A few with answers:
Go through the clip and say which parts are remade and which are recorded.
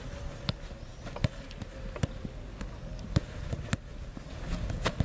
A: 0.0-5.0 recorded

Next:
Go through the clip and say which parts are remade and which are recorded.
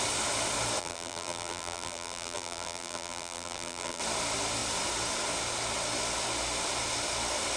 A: 0.0-0.8 recorded; 0.8-4.0 remade; 4.0-7.6 recorded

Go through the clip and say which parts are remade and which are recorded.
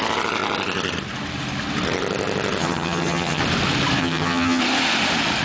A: 0.0-2.6 recorded; 2.6-3.4 remade; 3.4-4.0 recorded; 4.0-4.6 remade; 4.6-5.4 recorded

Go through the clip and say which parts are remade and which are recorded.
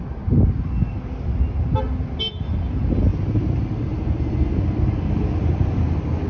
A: 0.0-5.2 recorded; 5.2-5.8 remade; 5.8-6.3 recorded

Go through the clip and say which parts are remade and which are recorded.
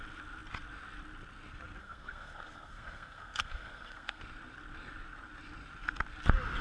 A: 0.0-1.8 recorded; 1.8-4.2 remade; 4.2-6.6 recorded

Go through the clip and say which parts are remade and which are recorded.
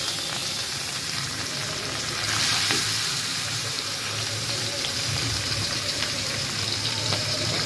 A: 0.0-0.4 recorded; 0.4-2.7 remade; 2.7-3.3 recorded; 3.3-7.7 remade